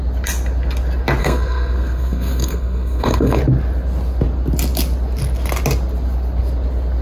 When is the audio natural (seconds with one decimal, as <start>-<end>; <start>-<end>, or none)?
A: 0.0-1.2; 3.4-7.0